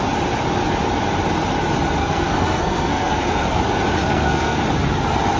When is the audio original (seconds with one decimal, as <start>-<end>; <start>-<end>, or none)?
0.0-2.0; 3.6-4.0; 4.6-5.4